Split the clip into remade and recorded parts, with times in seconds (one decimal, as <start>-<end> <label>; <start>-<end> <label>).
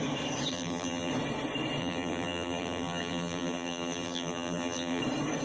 0.0-0.5 recorded; 0.5-1.1 remade; 1.1-1.8 recorded; 1.8-5.0 remade; 5.0-5.4 recorded